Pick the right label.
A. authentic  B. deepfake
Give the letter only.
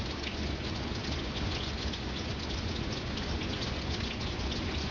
B